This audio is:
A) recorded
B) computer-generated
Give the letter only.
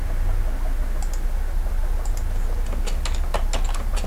A